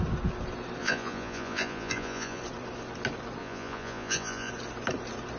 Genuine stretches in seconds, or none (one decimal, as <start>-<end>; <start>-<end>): 0.0-0.8; 2.4-3.4; 4.5-5.4

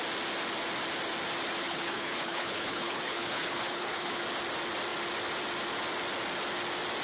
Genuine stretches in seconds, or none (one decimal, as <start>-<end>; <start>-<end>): 0.0-1.6; 4.2-7.0

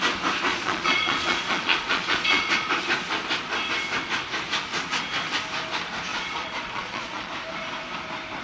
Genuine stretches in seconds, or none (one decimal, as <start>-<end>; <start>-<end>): 0.0-0.5; 2.7-6.1; 7.3-8.4

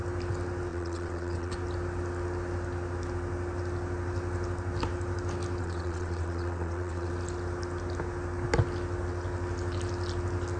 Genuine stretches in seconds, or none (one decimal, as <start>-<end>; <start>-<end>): 0.0-0.7; 1.5-5.6; 7.1-10.6

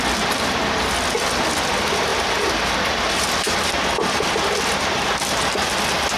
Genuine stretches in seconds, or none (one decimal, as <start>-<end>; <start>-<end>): 0.0-6.2

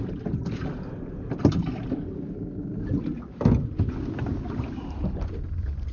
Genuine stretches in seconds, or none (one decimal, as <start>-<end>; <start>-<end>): 0.0-5.9

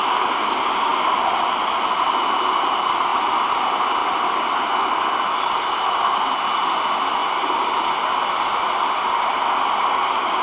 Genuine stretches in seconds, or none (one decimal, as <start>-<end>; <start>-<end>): 0.0-3.1; 3.6-4.0; 4.7-7.2; 7.8-10.4

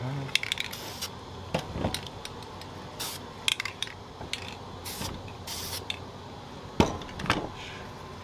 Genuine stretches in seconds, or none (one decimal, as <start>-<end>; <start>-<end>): 0.0-3.5; 4.2-8.2